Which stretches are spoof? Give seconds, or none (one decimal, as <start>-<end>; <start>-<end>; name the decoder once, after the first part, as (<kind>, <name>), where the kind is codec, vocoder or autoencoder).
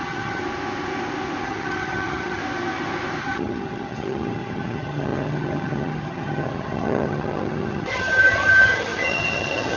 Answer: 0.0-0.4 (vocoder, HiFi-GAN); 1.4-2.4; 3.2-9.8